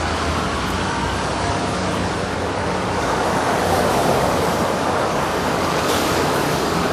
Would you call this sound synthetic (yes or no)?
yes